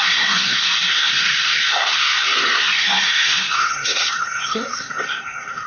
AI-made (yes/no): yes